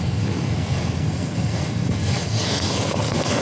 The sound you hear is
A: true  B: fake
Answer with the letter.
B